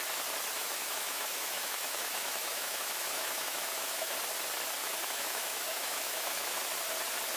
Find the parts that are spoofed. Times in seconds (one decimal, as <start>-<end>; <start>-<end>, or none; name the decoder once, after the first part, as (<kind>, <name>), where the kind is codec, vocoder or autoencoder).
0.6-4.1 (autoencoder, DAC-VAE); 4.8-6.6